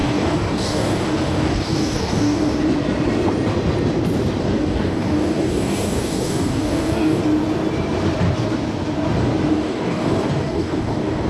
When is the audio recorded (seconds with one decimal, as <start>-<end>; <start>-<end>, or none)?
2.5-4.4; 7.2-9.5